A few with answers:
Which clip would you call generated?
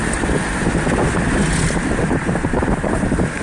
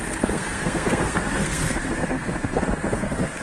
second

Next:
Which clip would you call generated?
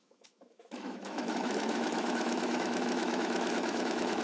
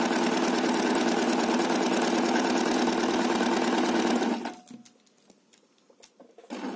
first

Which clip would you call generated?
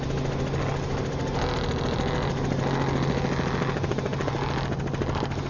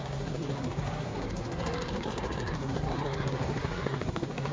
second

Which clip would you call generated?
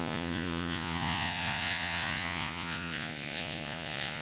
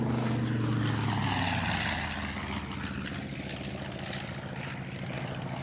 first